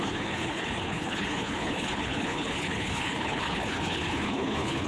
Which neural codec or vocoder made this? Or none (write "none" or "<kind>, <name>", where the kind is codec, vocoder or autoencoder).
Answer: codec, HILCodec